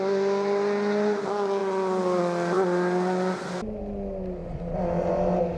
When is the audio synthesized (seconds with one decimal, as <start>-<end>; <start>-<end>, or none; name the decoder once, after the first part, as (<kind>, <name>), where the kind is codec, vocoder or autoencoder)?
none